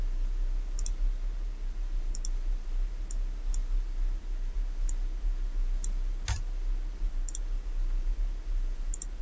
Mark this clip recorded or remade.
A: recorded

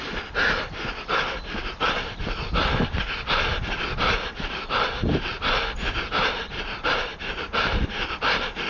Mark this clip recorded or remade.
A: recorded